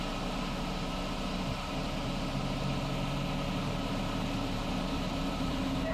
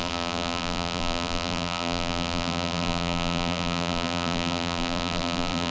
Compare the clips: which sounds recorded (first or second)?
first